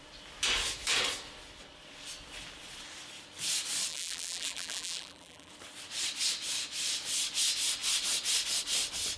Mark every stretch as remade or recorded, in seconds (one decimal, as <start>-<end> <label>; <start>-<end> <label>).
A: 0.0-3.9 recorded; 3.9-5.5 remade; 5.5-9.2 recorded